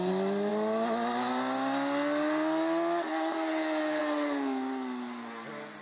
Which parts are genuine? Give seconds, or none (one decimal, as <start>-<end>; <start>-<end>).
0.0-5.8